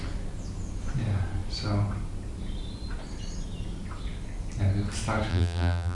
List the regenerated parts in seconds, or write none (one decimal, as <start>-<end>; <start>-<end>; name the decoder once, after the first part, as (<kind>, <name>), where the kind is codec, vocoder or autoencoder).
5.3-6.0 (vocoder, BigVGAN v2)